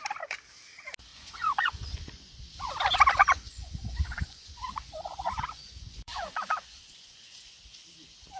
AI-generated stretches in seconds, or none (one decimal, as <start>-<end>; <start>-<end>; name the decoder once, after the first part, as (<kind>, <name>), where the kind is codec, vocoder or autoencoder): 1.1-2.4 (vocoder, Vocos); 3.2-7.6